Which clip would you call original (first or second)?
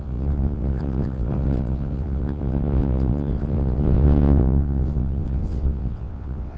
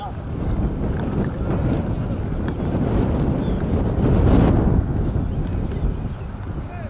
second